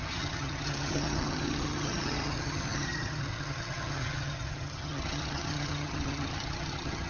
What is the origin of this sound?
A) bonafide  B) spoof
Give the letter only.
B